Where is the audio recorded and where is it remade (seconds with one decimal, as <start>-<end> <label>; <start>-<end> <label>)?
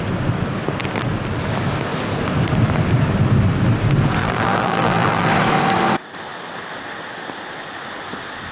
0.0-4.2 recorded; 4.2-5.3 remade; 5.3-8.5 recorded